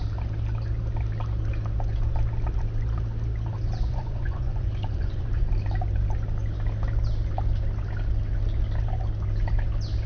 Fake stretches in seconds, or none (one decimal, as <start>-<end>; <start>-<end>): 3.9-5.5